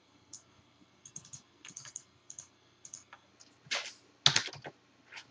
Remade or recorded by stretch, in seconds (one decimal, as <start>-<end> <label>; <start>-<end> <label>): 0.0-3.3 remade; 3.3-5.3 recorded